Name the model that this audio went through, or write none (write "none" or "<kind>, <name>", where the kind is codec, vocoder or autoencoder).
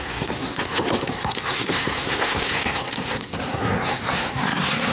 codec, SNAC